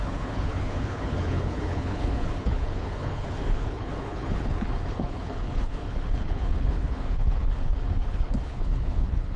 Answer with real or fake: fake